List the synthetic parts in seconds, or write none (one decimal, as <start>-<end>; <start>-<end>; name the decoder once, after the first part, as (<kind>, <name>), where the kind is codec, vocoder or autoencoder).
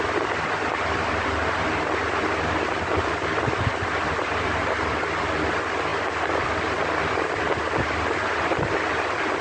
0.0-5.9 (vocoder, BigVGAN v2); 7.2-9.4